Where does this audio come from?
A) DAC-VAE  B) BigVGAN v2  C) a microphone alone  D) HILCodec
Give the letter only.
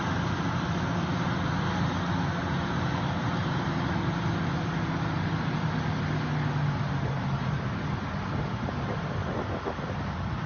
C